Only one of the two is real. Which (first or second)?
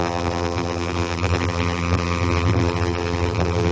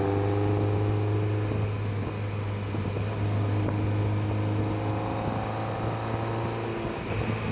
second